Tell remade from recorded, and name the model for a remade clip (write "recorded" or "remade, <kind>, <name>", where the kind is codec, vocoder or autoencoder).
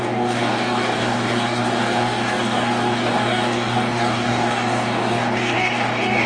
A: remade, codec, DAC